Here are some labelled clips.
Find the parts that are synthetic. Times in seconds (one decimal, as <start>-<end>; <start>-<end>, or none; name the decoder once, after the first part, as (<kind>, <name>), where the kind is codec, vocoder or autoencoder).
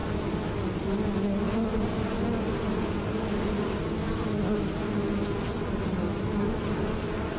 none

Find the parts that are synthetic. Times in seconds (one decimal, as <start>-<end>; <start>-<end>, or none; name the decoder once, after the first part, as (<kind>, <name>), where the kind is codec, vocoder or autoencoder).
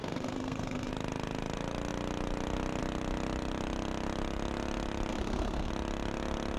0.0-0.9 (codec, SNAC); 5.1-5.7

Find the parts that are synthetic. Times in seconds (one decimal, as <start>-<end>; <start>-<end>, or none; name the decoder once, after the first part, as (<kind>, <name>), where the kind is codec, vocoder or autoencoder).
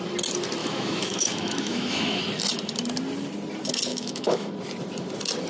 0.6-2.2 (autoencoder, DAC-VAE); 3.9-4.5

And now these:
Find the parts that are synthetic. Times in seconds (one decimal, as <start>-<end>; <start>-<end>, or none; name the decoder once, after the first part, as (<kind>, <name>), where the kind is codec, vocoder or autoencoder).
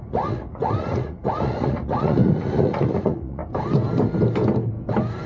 0.0-3.4 (vocoder, Vocos)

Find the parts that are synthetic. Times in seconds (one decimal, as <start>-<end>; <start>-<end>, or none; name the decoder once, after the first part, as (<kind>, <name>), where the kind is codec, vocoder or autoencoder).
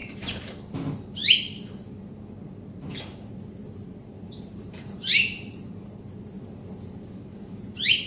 0.0-0.5 (vocoder, BigVGAN v2); 4.0-6.1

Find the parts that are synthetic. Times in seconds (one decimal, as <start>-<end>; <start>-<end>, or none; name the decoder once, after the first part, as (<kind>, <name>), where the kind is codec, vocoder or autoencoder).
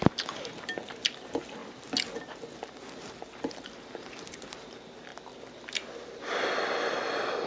none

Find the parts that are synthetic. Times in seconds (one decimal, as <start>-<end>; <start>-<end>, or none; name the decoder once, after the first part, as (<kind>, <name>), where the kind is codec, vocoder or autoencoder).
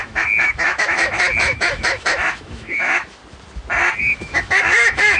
0.0-3.2 (autoencoder, DAC-VAE); 4.0-5.2